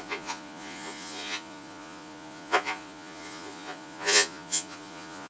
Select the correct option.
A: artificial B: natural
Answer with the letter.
A